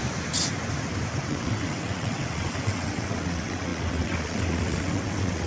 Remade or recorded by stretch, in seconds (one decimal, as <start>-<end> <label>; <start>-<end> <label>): 0.0-1.1 recorded; 1.1-5.5 remade